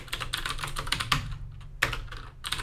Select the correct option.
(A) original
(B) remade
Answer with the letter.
A